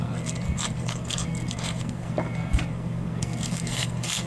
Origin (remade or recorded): remade